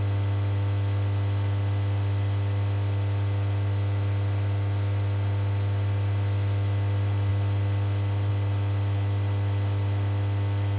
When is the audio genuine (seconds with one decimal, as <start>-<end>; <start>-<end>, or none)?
0.0-10.8